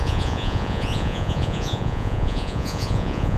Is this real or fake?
fake